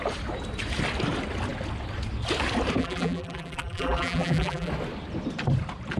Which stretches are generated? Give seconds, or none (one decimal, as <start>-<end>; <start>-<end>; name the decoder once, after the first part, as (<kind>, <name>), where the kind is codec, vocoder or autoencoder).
2.8-4.7 (vocoder, BigVGAN v2)